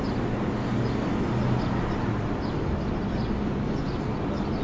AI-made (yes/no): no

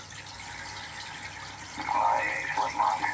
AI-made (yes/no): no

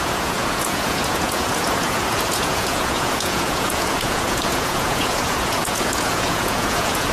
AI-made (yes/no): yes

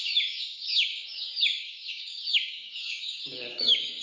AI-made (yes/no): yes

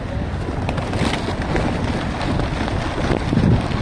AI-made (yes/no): no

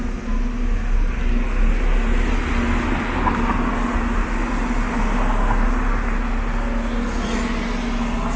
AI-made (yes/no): no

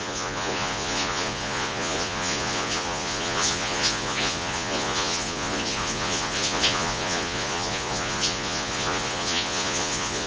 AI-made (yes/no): yes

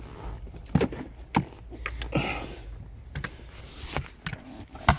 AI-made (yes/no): no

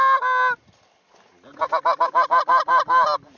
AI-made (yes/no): no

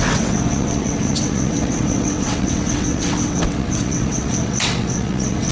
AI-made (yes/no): yes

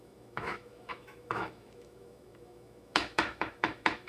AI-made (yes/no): yes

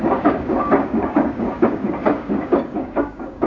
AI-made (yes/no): yes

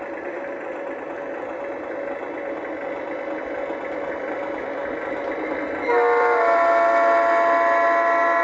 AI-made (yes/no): no